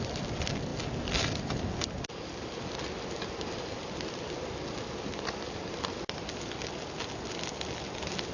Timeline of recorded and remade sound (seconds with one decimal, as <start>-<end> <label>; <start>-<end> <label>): 0.0-8.3 recorded